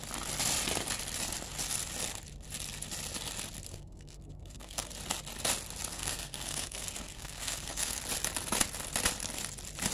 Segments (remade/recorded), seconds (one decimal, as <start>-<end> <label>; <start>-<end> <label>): 0.0-3.7 recorded; 3.7-4.9 remade; 4.9-5.9 recorded; 5.9-8.0 remade; 8.0-9.9 recorded